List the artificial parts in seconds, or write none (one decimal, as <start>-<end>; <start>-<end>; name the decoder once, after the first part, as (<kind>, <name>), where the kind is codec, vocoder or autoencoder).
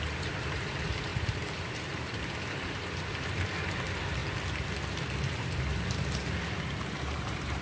0.0-4.2 (vocoder, BigVGAN v2); 5.3-7.6